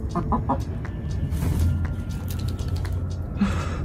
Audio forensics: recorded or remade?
recorded